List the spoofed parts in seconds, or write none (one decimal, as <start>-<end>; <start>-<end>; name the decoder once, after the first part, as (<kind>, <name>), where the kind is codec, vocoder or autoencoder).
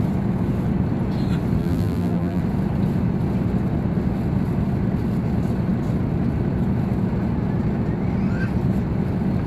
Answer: 1.6-2.4 (vocoder, BigVGAN v2)